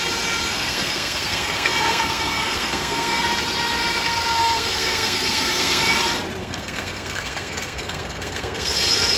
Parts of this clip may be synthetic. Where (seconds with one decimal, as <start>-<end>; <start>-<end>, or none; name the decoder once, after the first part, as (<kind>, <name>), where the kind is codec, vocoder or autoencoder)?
0.4-3.3 (codec, SNAC); 3.8-5.8; 6.4-8.7